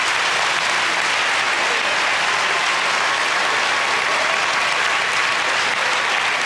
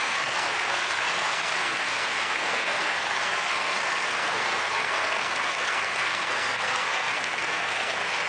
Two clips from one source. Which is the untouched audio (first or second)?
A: first